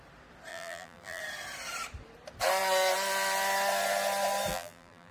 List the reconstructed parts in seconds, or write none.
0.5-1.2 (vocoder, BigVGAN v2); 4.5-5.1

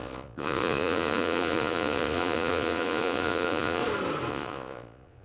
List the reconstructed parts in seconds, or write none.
0.0-3.8 (vocoder, Vocos); 4.3-5.2

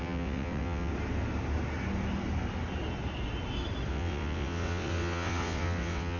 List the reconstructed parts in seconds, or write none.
0.0-0.9 (vocoder, WaveNeXt); 3.9-6.2

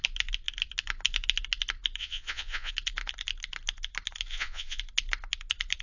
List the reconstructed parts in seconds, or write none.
2.0-2.7 (vocoder, Vocos); 4.3-4.8

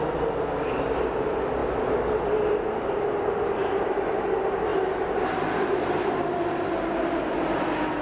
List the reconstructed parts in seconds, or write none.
none

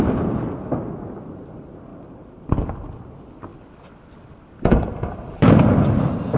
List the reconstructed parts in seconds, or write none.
1.9-3.1 (vocoder, BigVGAN v2); 3.5-5.7